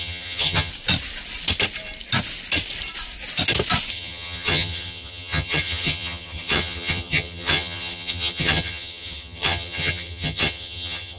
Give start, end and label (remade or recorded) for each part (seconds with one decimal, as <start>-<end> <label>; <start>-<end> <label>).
0.0-0.7 remade; 0.7-3.9 recorded; 3.9-11.2 remade